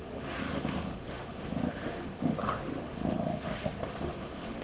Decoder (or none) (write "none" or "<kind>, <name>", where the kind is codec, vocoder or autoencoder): autoencoder, DAC-VAE